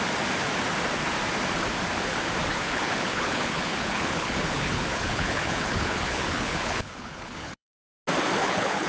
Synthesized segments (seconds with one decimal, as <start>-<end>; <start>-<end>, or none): 2.5-7.8; 8.4-8.9

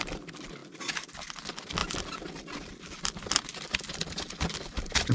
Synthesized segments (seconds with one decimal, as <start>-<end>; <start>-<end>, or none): none

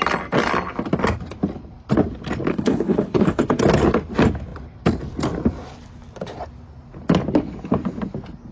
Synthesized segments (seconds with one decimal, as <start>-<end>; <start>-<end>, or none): 2.5-3.6

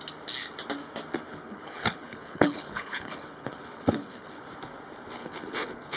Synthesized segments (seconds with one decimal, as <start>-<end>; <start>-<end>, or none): 1.3-4.4; 5.2-6.0

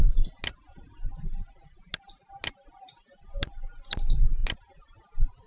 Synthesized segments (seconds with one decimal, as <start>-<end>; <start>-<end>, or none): none

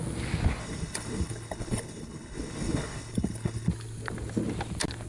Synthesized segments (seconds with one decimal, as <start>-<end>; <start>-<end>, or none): 0.6-3.7

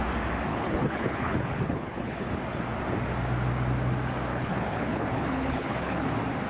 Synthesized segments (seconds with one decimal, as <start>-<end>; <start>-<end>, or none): 0.5-2.3; 4.3-6.1